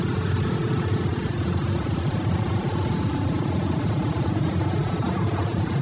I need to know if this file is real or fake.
real